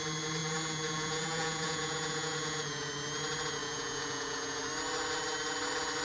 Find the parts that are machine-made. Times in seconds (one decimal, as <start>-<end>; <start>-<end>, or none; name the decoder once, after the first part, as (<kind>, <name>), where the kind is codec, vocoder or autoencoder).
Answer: 0.4-2.9 (vocoder, Vocos); 3.6-4.6